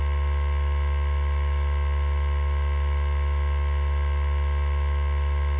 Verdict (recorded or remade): remade